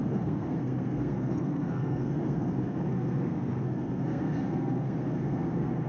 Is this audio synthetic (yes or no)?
yes